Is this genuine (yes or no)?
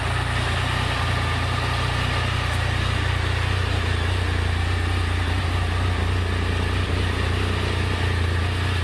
yes